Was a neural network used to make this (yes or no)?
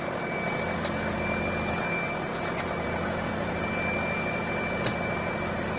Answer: no